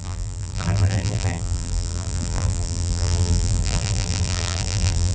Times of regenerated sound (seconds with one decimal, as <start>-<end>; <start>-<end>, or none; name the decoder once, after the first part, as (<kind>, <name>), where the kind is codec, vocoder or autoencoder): 0.0-5.1 (vocoder, BigVGAN v2)